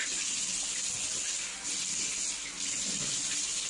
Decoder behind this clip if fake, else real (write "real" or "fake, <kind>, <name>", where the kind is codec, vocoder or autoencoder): real